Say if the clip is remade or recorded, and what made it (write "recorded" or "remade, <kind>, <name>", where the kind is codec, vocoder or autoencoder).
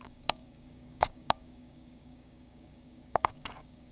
remade, codec, DAC